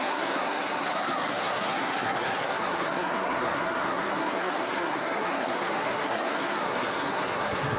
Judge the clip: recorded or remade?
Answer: remade